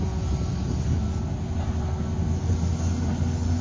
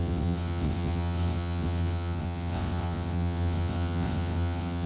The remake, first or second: second